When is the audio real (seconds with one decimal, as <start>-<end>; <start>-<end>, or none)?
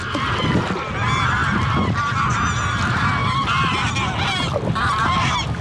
0.0-5.6